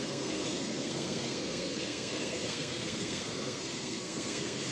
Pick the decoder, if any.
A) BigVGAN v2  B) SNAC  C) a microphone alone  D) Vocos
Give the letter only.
B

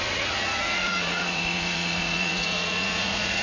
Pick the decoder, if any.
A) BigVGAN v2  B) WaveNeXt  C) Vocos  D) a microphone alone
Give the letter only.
C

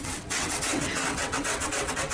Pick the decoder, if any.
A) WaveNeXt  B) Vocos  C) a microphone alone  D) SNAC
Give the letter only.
A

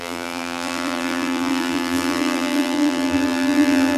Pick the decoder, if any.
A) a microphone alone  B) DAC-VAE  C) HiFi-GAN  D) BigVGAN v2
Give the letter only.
D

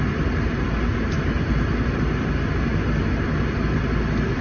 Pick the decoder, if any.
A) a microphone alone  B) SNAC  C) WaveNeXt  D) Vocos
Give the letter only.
A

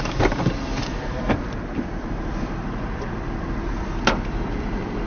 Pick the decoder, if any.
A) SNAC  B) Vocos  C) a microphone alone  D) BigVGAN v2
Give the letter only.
D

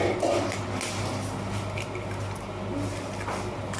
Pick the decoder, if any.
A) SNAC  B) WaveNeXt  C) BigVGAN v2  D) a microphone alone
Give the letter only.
D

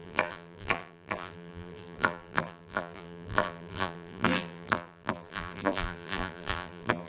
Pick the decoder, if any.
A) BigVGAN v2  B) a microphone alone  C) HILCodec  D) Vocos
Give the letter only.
A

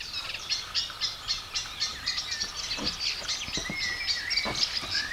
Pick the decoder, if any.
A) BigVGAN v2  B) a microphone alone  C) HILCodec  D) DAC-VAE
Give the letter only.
B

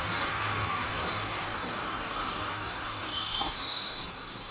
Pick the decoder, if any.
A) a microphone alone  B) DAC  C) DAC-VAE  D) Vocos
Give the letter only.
B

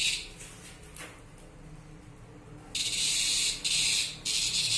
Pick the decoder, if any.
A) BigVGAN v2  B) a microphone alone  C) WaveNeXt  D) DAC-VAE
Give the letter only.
B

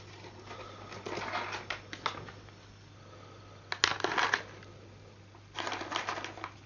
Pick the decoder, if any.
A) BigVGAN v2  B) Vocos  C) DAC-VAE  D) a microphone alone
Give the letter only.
D